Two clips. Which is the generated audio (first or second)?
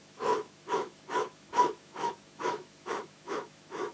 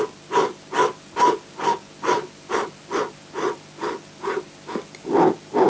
first